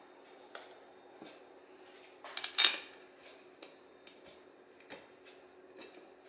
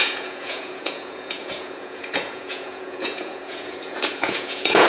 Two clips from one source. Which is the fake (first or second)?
second